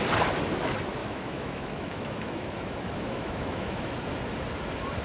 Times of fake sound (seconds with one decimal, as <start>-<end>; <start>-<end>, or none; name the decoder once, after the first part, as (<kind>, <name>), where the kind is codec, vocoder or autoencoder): 1.0-4.0 (autoencoder, DAC-VAE)